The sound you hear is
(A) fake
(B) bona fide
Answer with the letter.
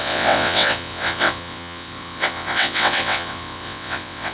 A